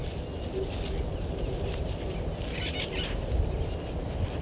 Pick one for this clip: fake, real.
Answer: real